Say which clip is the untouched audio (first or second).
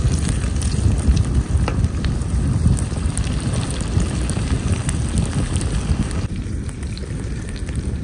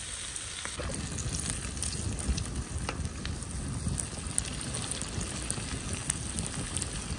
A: second